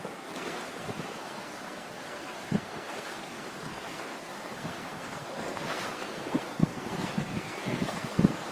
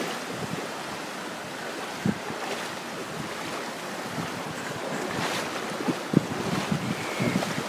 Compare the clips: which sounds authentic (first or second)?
second